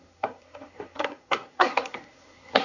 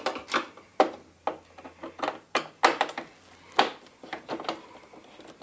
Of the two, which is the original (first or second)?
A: second